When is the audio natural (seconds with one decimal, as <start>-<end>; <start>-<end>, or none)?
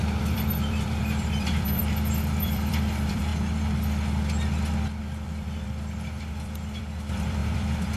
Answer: 3.3-5.0